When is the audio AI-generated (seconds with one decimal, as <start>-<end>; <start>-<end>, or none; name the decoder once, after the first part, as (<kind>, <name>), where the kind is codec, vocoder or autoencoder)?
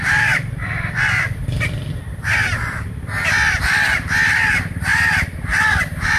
0.0-3.9 (vocoder, BigVGAN v2); 4.5-6.2